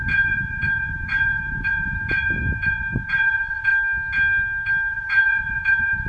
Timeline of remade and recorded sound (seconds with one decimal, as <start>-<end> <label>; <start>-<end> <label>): 0.0-3.7 remade; 3.7-4.9 recorded; 4.9-6.1 remade